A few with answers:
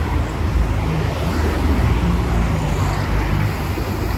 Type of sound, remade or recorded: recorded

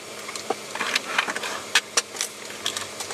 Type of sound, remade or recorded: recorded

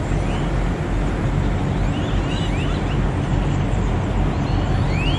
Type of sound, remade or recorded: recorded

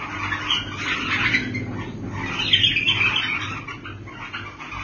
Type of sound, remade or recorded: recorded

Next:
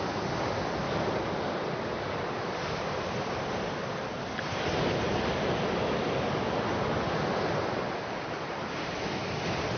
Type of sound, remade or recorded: recorded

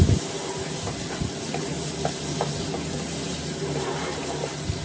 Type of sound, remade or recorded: recorded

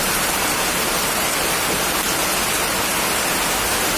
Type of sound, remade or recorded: recorded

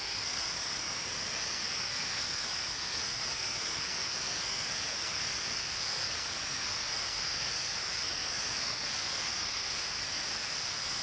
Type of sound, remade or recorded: remade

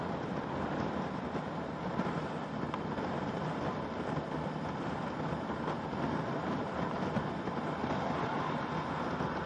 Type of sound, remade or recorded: recorded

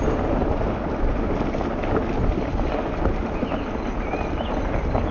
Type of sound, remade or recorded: recorded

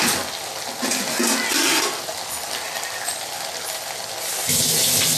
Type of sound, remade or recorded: recorded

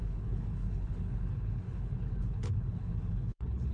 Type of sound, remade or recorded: remade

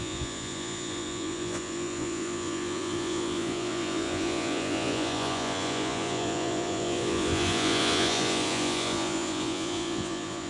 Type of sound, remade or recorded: remade